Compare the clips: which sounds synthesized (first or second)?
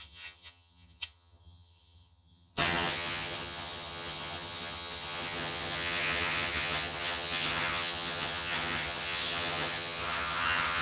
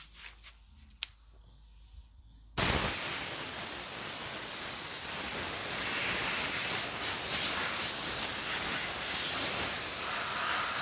first